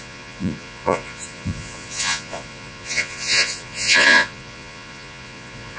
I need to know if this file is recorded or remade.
remade